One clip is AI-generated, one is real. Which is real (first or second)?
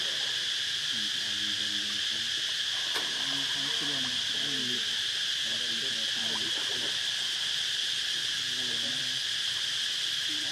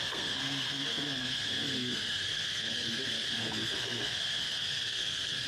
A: first